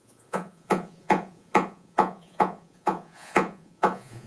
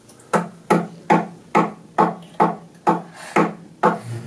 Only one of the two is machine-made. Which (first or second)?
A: first